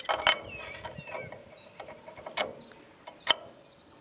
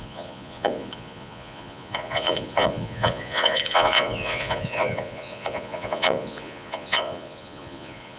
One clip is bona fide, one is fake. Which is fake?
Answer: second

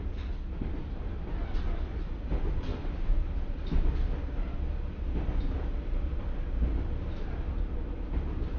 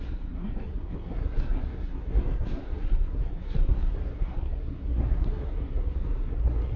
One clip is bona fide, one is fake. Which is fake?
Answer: second